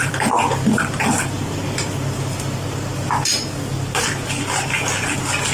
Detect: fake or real real